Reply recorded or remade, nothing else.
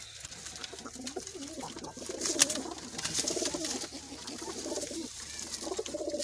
recorded